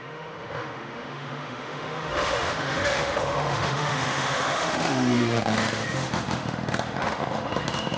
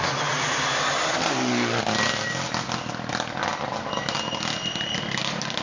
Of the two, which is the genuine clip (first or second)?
second